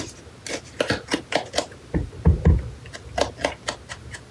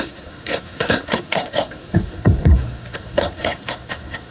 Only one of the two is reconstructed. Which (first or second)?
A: second